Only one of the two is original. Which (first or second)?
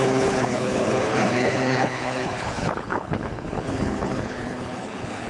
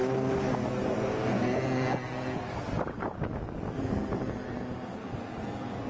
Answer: second